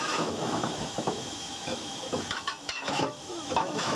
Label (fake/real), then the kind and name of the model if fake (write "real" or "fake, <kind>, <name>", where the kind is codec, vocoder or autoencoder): fake, autoencoder, DAC-VAE